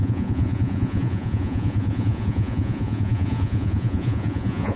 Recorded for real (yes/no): no